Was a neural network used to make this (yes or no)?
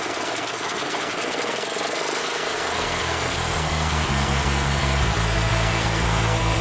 yes